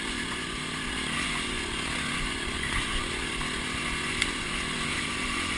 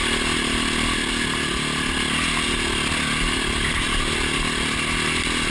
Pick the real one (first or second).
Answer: second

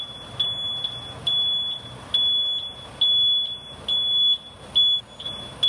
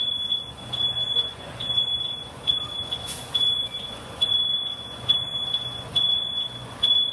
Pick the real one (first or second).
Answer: first